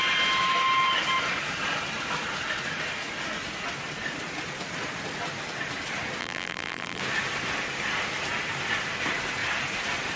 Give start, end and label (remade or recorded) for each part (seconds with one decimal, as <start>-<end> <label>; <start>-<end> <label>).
0.0-6.2 recorded; 6.2-7.0 remade; 7.0-10.2 recorded

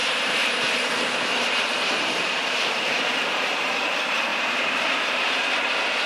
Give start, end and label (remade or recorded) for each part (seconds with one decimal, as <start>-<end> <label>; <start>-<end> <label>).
0.0-3.7 remade; 3.7-4.3 recorded; 4.3-5.4 remade; 5.4-6.1 recorded